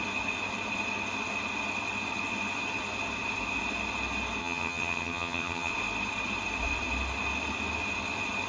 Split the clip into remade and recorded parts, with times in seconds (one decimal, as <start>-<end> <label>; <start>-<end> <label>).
0.0-4.4 recorded; 4.4-5.7 remade; 5.7-8.5 recorded